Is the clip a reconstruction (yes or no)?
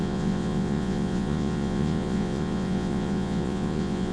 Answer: yes